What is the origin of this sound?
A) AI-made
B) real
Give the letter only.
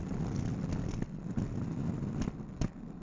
B